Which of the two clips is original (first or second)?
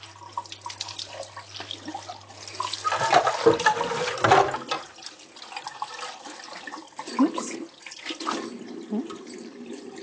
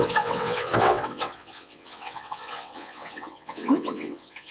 first